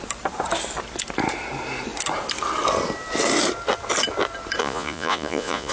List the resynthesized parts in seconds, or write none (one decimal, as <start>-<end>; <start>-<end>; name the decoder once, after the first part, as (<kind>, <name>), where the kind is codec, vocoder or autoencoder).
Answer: 4.6-5.7 (vocoder, Vocos)